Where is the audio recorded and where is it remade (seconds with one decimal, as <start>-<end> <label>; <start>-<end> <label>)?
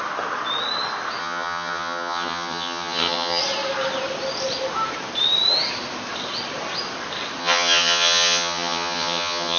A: 0.0-1.2 recorded; 1.2-3.4 remade; 3.4-7.4 recorded; 7.4-9.6 remade